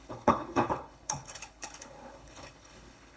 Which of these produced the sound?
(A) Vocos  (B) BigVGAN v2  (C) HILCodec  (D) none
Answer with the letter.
C